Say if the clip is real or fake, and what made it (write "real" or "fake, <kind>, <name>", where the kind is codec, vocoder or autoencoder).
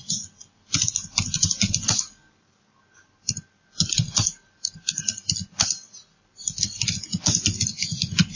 real